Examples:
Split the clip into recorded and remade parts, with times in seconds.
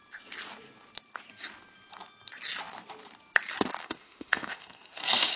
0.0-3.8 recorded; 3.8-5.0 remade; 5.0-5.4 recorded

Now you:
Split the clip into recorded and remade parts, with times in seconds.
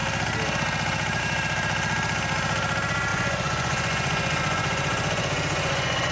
0.0-3.1 recorded; 3.1-6.1 remade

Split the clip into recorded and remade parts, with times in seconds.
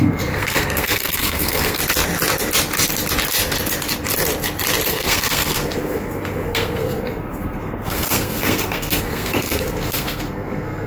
0.0-1.8 remade; 1.8-4.9 recorded; 4.9-10.9 remade